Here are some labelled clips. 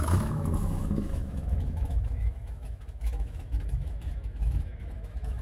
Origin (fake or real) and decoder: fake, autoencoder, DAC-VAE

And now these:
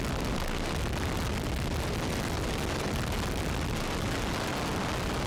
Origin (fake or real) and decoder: real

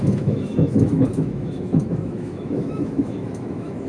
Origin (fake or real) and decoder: fake, autoencoder, DAC-VAE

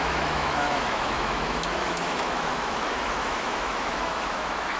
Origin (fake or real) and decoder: fake, autoencoder, DAC-VAE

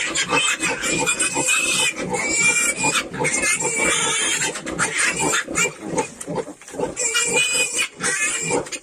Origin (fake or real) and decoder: real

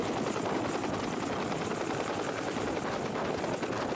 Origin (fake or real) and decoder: real